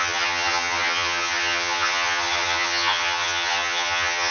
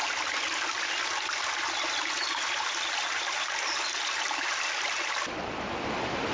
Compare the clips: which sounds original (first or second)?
second